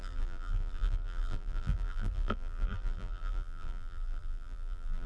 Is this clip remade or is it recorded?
remade